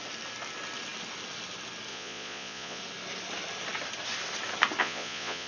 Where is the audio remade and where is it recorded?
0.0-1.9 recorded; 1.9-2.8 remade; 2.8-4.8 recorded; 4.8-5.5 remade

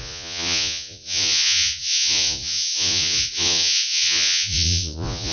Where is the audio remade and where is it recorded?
0.0-5.3 remade

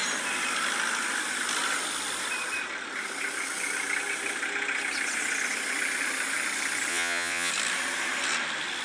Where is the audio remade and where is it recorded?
0.0-6.9 recorded; 6.9-7.5 remade; 7.5-8.8 recorded

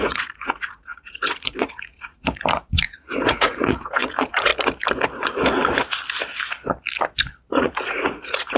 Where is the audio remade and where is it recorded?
0.0-4.5 remade; 4.5-7.5 recorded; 7.5-8.6 remade

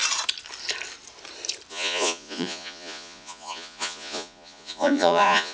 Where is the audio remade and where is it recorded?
0.0-1.7 recorded; 1.7-5.5 remade